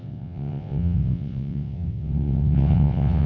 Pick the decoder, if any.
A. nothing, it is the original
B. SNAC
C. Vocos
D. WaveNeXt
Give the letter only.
D